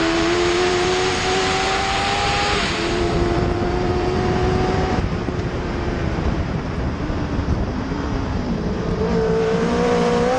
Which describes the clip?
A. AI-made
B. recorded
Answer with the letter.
A